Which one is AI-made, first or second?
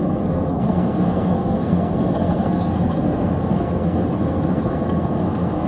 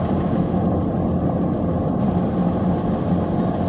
first